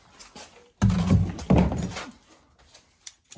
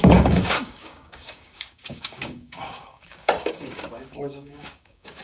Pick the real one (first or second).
first